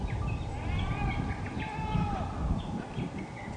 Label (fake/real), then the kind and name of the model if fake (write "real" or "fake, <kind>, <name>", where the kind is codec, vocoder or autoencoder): real